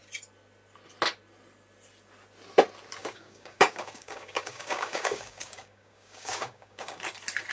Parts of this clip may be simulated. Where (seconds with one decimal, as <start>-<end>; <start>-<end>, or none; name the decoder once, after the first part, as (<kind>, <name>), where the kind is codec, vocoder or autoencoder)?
3.0-7.0 (codec, DAC)